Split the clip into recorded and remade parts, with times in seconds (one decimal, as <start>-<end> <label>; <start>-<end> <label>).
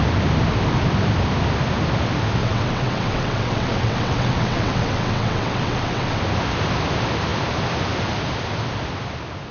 0.0-2.4 recorded; 2.4-6.2 remade; 6.2-9.5 recorded